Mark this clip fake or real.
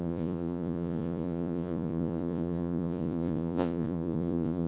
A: fake